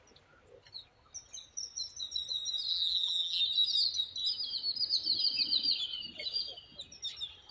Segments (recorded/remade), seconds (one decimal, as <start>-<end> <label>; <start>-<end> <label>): 0.0-2.7 recorded; 2.7-3.4 remade; 3.4-7.5 recorded